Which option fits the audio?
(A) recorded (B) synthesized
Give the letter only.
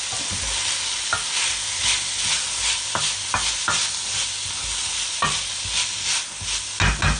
A